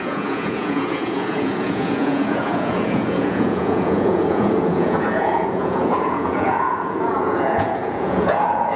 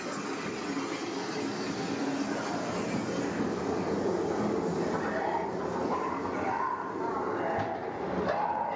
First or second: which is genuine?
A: second